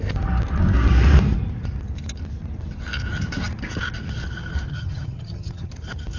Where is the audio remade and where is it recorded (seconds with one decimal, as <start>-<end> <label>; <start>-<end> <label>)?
0.0-4.7 recorded; 4.7-5.7 remade; 5.7-6.2 recorded